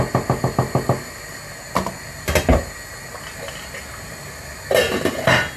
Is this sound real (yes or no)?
yes